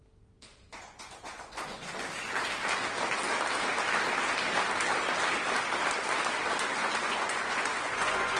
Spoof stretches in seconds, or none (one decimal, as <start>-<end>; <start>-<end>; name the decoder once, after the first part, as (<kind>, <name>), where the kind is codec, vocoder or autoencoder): 0.5-1.9 (vocoder, Vocos); 6.8-8.4